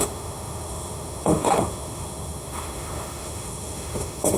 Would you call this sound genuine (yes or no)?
no